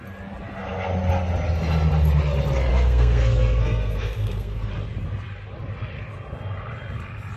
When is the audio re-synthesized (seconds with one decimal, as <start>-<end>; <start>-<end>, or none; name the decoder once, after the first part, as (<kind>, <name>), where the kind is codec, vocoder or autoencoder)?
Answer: 2.7-4.7 (codec, SNAC)

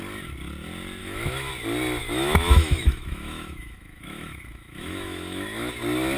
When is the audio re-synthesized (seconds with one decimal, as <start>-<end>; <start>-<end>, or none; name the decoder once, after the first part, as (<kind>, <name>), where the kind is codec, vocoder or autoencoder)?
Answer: 1.0-1.5 (autoencoder, DAC-VAE); 2.0-5.7

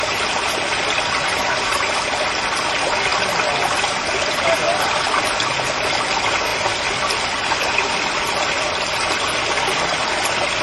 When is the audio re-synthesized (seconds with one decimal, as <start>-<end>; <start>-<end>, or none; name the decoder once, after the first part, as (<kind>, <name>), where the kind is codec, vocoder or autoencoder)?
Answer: 1.4-2.0 (vocoder, BigVGAN v2)

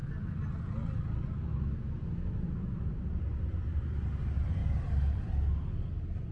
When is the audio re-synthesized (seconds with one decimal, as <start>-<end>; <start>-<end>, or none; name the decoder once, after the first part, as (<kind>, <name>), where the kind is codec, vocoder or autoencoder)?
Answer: 1.5-2.9 (autoencoder, DAC-VAE)